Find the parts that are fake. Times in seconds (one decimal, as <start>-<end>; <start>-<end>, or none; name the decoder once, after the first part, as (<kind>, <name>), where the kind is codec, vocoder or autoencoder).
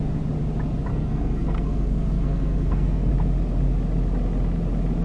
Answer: 0.9-3.1 (codec, SNAC)